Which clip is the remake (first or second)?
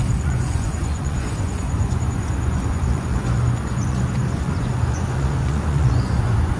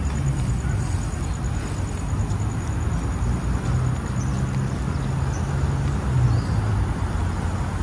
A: first